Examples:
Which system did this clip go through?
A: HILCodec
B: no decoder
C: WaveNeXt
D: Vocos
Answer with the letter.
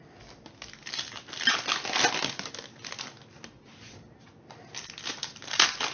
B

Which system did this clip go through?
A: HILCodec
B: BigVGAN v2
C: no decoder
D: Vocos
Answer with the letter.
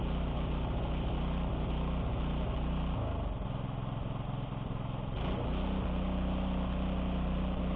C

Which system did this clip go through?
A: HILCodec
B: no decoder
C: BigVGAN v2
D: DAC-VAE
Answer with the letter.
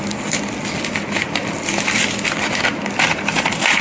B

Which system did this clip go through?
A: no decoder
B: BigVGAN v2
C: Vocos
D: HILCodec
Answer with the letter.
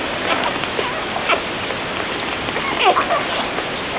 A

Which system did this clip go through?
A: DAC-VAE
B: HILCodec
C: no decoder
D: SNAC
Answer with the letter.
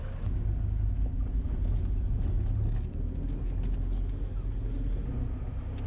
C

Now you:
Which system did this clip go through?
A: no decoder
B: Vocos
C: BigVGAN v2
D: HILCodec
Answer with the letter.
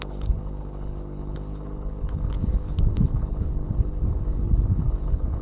D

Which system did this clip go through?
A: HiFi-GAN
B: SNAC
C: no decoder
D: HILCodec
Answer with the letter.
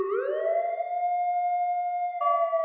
C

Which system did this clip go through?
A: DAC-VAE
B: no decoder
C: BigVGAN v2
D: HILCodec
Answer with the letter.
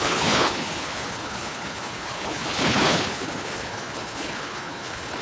D